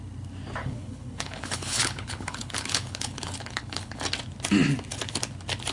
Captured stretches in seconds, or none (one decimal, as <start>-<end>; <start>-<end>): 0.0-0.6; 4.0-5.7